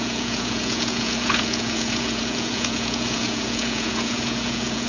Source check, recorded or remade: remade